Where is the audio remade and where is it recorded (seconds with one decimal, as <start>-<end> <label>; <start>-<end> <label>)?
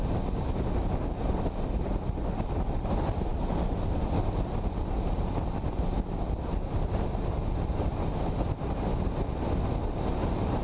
0.0-10.6 recorded